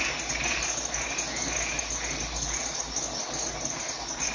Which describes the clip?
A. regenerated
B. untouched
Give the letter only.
B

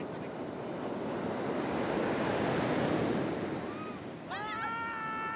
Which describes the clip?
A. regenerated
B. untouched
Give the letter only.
B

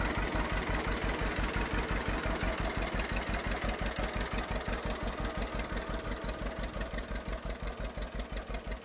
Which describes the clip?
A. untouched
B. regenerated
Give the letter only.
A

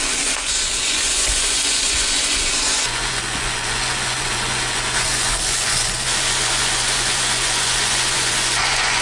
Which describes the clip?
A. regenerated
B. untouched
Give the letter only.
A